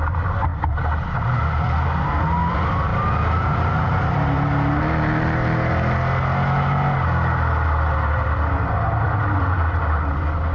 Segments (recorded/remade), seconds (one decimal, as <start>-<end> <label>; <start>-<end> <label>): 0.0-10.5 recorded